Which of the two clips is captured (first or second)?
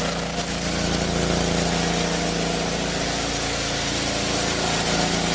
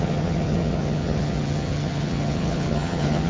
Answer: first